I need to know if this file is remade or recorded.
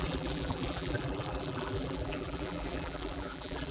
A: remade